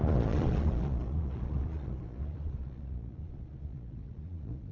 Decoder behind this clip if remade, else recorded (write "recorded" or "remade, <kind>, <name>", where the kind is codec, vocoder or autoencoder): remade, vocoder, Vocos